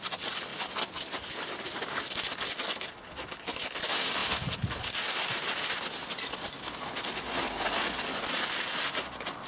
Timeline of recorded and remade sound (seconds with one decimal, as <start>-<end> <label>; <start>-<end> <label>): 0.0-9.5 recorded